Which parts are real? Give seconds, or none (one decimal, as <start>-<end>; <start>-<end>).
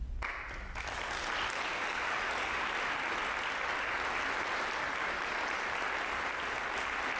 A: 0.0-1.7; 2.6-7.2